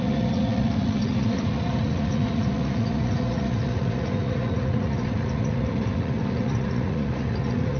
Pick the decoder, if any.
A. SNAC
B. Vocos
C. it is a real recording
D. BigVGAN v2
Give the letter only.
B